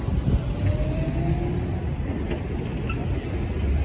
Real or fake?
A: real